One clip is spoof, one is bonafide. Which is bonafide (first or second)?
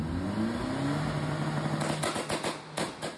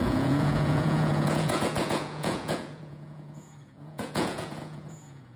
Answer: first